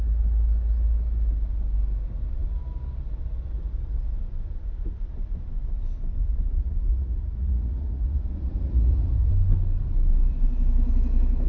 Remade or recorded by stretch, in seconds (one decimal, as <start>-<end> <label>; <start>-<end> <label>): 0.0-6.2 recorded; 6.2-9.3 remade; 9.3-11.5 recorded

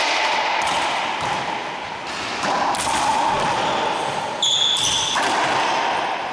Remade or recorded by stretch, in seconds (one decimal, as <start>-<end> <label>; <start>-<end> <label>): 0.0-6.3 recorded

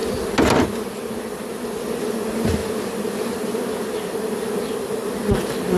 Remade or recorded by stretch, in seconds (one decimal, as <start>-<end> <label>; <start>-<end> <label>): 0.0-5.8 recorded

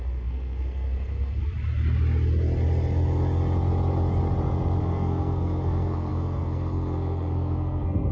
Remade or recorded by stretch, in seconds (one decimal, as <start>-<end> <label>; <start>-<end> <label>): 0.0-1.4 remade; 1.4-4.8 recorded; 4.8-8.1 remade

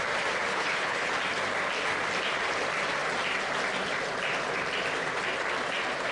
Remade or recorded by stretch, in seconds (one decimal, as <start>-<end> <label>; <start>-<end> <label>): 0.0-0.5 recorded; 0.5-1.1 remade; 1.1-6.1 recorded

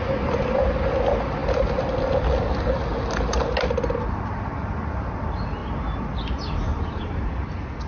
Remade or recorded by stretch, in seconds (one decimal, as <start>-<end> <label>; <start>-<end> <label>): 0.0-6.7 recorded; 6.7-7.3 remade; 7.3-7.9 recorded

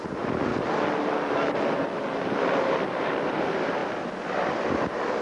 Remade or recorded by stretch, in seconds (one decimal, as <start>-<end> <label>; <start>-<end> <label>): 0.0-0.5 remade; 0.5-1.8 recorded; 1.8-3.8 remade; 3.8-4.5 recorded; 4.5-5.2 remade